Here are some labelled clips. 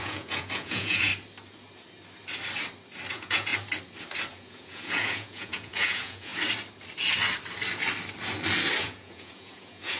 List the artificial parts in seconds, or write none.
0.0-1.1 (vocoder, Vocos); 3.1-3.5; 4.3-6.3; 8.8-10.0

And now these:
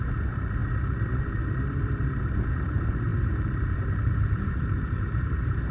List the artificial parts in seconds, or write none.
0.0-0.6 (vocoder, BigVGAN v2); 1.2-5.7

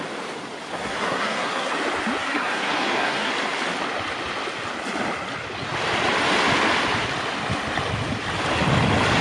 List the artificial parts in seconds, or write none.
0.7-1.7 (codec, SNAC); 2.2-3.3

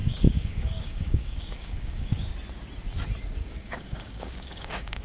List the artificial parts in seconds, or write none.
0.0-2.3 (codec, DAC); 3.4-5.0

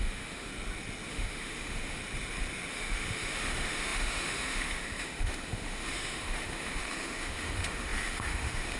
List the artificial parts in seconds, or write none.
0.0-0.5 (autoencoder, DAC-VAE); 1.1-2.0; 2.7-8.8